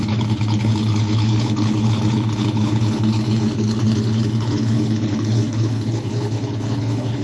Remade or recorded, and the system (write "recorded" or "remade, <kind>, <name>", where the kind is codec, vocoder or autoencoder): remade, codec, HILCodec